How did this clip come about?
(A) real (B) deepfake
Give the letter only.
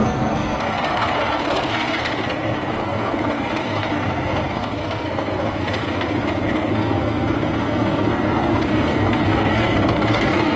B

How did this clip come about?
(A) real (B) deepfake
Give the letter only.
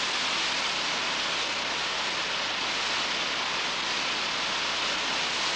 A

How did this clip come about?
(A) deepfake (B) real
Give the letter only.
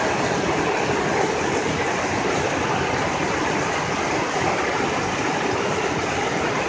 B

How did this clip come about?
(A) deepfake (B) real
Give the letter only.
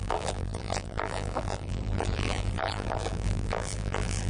A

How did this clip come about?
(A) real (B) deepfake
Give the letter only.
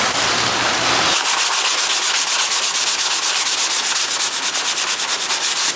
A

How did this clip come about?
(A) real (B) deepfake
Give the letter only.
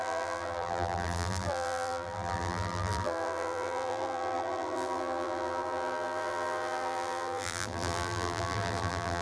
B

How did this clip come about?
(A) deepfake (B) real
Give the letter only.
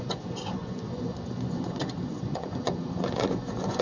A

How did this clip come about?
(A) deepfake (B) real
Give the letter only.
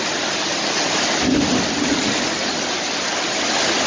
B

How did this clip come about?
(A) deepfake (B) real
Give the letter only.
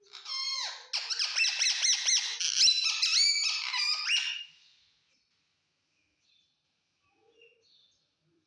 B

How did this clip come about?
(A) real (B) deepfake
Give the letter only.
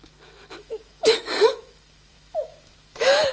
B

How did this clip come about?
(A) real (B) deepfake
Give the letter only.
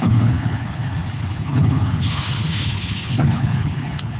B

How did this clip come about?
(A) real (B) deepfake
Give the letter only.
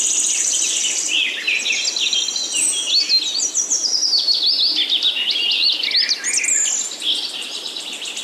A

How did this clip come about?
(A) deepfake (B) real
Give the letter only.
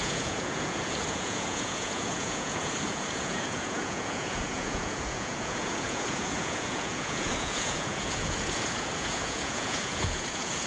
A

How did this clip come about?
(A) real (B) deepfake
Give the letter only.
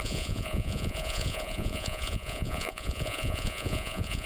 B